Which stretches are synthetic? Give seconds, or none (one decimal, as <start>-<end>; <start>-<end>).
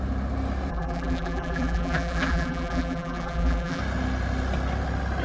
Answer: 0.7-3.8